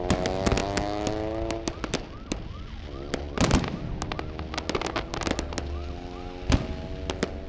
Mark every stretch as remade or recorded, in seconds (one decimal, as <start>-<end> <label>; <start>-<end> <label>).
0.0-7.5 recorded

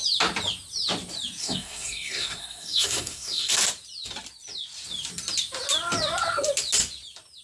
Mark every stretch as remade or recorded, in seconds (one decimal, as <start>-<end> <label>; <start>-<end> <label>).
0.0-1.4 recorded; 1.4-3.5 remade; 3.5-7.4 recorded

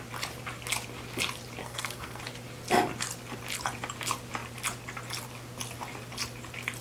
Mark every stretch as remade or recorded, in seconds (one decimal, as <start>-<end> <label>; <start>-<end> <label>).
0.0-1.6 recorded; 1.6-2.2 remade; 2.2-6.8 recorded

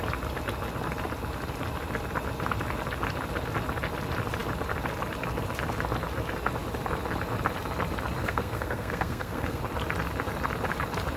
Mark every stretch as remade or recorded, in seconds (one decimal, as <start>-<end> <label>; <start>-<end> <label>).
0.0-8.2 recorded; 8.2-9.6 remade; 9.6-11.2 recorded

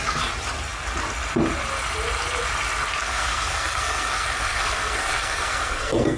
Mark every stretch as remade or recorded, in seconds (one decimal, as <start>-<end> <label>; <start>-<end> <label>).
0.0-3.0 recorded; 3.0-6.2 remade